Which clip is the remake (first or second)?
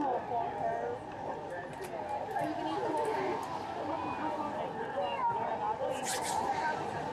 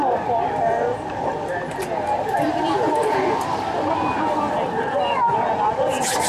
second